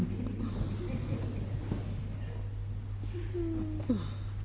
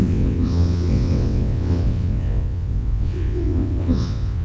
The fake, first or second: second